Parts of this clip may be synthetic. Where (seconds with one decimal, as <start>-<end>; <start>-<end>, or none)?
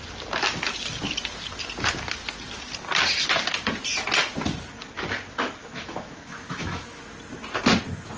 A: 5.6-7.0